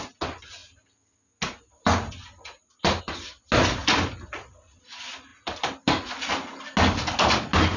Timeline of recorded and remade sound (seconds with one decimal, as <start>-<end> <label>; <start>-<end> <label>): 0.0-7.8 recorded